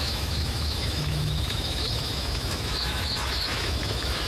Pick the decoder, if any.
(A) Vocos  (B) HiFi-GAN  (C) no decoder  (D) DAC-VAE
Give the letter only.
D